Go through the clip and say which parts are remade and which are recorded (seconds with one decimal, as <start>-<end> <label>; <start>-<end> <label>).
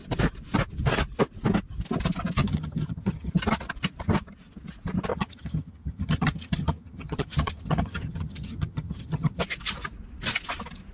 0.0-2.4 recorded; 2.4-3.3 remade; 3.3-5.1 recorded; 5.1-9.4 remade; 9.4-10.9 recorded